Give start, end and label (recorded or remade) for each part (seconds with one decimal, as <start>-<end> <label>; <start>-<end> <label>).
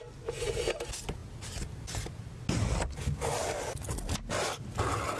0.0-5.2 recorded